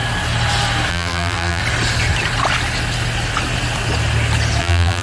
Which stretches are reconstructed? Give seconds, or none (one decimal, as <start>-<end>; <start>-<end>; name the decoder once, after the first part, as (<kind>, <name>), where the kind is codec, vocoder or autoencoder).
0.9-1.6 (vocoder, BigVGAN v2); 4.6-5.0